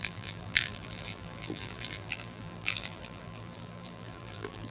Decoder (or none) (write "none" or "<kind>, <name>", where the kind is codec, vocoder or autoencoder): vocoder, BigVGAN v2